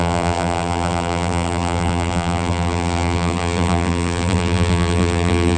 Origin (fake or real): fake